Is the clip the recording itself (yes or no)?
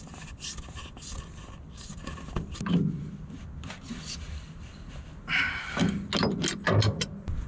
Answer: yes